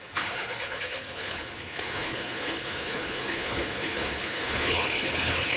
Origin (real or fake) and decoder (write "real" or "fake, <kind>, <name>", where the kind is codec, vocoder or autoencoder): fake, codec, HILCodec